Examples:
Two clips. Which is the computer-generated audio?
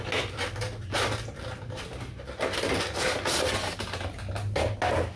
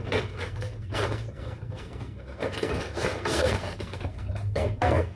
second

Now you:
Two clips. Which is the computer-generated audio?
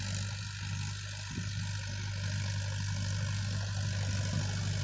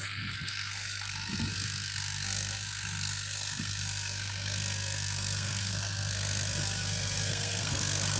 second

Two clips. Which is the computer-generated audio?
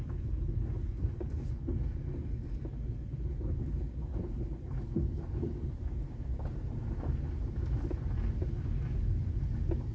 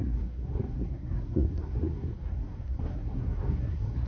second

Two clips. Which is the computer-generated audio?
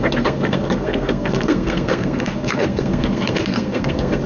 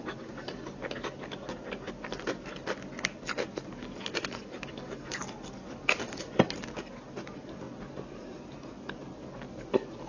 first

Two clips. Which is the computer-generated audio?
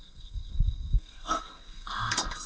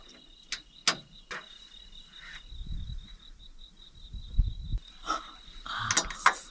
first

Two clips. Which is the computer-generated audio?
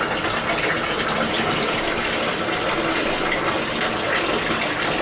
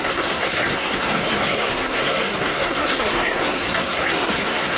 second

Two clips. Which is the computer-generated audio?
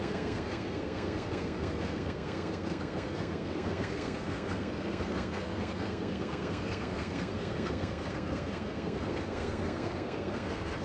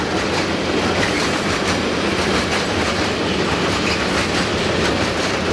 first